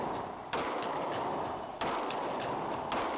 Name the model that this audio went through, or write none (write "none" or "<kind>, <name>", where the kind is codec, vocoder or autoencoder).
none